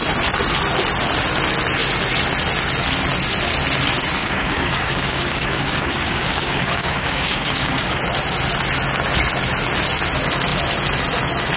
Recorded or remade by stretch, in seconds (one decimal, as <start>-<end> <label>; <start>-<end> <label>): 0.0-4.2 recorded; 4.2-8.0 remade; 8.0-11.6 recorded